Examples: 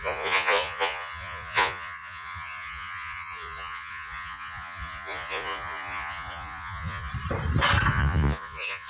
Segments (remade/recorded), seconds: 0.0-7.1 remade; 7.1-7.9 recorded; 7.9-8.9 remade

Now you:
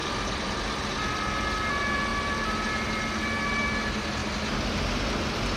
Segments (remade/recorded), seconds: 0.0-5.6 recorded

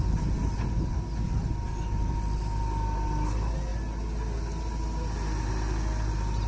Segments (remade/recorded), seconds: 0.0-6.5 recorded

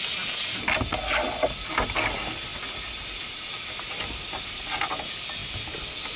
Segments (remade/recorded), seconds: 0.0-6.2 recorded

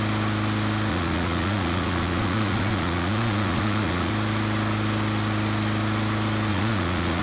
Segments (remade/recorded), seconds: 0.0-0.9 recorded; 0.9-4.1 remade; 4.1-6.5 recorded; 6.5-7.2 remade